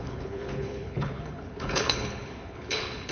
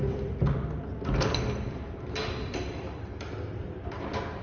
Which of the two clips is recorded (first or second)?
second